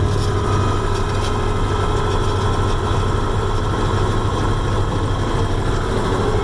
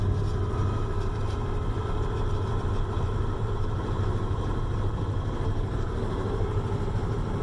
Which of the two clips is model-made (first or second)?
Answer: second